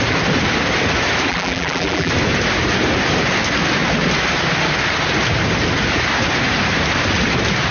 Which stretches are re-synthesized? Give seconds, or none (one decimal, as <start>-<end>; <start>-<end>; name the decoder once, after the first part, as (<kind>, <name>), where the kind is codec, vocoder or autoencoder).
1.3-2.1 (vocoder, BigVGAN v2)